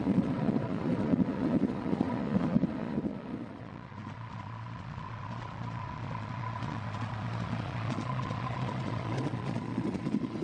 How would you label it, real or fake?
fake